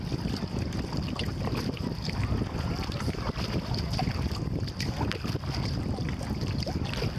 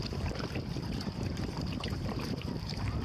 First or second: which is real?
first